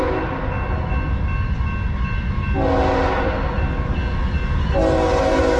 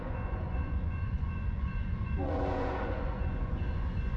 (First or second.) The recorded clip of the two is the first